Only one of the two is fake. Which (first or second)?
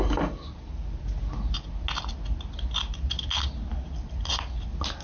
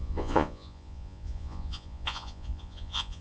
second